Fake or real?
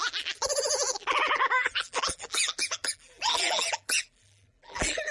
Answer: fake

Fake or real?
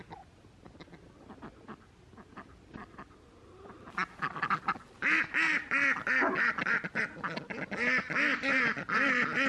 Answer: real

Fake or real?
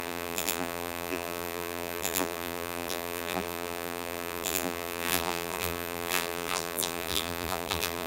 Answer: fake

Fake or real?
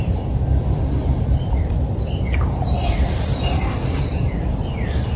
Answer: fake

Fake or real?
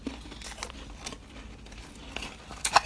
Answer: real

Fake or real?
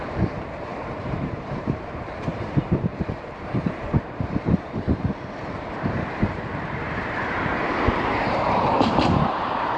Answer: fake